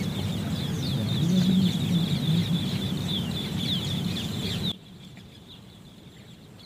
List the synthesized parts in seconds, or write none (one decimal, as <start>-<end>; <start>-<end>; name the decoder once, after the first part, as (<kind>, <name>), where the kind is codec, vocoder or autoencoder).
2.4-5.9 (vocoder, BigVGAN v2)